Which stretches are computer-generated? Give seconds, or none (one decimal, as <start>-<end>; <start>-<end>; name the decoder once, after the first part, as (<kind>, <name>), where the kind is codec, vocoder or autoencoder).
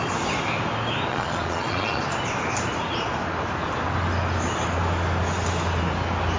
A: 1.1-2.0 (vocoder, Vocos)